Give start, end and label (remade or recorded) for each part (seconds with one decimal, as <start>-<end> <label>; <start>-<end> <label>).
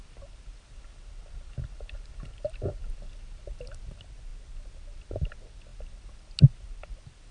0.0-7.3 recorded